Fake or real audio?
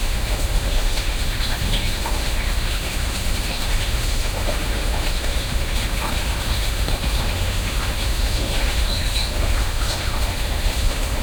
fake